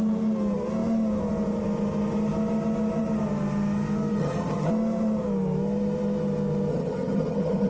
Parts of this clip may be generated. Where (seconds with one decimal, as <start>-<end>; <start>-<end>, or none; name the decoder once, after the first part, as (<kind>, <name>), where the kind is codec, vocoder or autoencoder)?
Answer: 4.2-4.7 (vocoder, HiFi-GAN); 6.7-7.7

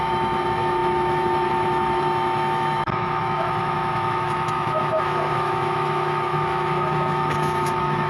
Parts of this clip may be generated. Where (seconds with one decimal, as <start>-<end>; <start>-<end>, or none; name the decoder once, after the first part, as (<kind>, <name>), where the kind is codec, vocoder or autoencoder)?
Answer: 0.0-8.1 (autoencoder, DAC-VAE)

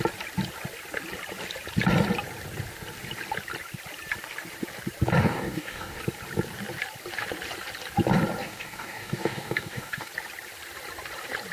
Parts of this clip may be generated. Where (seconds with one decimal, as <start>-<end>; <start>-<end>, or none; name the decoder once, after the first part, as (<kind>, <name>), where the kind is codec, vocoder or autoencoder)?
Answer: 5.2-6.0 (codec, DAC); 8.4-10.1

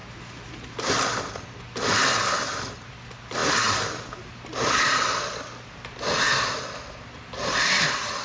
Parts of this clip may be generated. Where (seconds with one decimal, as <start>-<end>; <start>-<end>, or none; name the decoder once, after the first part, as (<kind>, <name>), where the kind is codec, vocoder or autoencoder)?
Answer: none

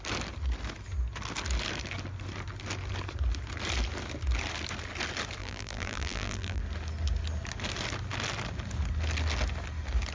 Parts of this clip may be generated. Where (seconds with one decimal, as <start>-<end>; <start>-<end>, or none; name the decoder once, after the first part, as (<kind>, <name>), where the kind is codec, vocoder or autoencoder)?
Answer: 5.4-6.6 (vocoder, BigVGAN v2)

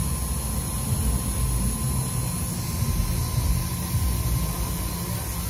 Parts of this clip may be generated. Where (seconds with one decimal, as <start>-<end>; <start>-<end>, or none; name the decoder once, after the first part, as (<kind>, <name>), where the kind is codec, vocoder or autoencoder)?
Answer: none

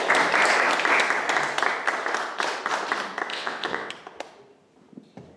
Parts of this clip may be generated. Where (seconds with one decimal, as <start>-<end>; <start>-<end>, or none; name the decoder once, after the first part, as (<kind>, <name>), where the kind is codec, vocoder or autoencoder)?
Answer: 3.3-3.9 (vocoder, WaveNeXt)

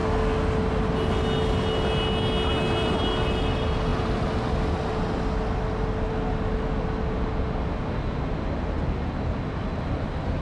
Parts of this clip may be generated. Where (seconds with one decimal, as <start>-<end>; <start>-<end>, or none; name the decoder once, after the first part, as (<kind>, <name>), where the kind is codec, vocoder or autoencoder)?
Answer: none